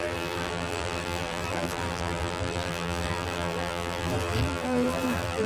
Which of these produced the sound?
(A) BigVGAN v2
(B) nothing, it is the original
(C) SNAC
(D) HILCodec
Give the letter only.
A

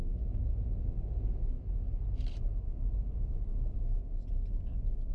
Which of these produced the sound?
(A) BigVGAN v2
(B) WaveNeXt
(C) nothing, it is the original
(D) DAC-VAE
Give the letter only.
C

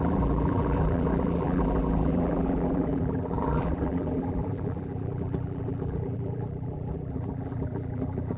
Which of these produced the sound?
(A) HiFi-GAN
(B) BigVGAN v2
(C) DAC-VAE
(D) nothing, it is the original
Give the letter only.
B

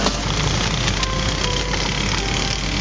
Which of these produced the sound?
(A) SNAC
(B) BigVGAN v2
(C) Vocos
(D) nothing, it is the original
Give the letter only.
D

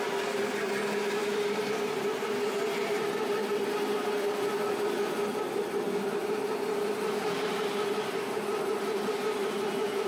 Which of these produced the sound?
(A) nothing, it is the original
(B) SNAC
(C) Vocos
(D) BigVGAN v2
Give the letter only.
A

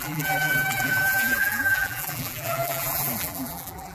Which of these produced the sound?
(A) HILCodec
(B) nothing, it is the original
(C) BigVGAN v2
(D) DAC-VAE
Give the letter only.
C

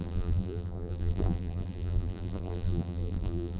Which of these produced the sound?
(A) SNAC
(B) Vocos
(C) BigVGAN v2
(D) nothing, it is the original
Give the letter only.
C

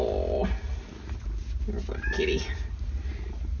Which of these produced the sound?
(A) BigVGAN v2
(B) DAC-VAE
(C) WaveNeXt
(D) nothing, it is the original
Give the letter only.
D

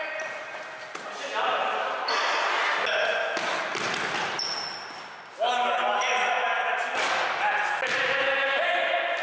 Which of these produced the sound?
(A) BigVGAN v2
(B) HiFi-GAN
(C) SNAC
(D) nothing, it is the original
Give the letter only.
D